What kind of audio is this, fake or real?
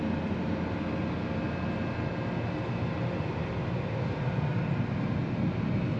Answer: real